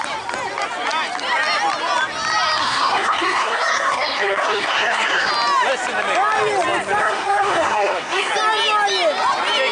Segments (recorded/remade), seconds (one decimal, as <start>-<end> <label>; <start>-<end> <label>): 0.0-2.6 recorded; 2.6-5.3 remade; 5.3-7.0 recorded; 7.0-8.3 remade; 8.3-9.7 recorded